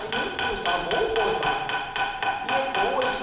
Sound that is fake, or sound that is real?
real